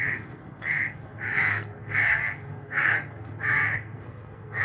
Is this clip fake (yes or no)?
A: yes